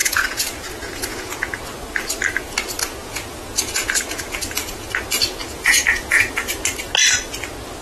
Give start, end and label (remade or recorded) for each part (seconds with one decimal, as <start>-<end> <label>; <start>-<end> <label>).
0.0-1.6 remade; 1.6-2.8 recorded; 2.8-4.9 remade; 4.9-5.4 recorded; 5.4-6.2 remade; 6.2-7.8 recorded